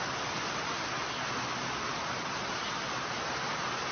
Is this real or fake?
real